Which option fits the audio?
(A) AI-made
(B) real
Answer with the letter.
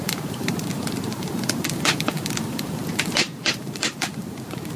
A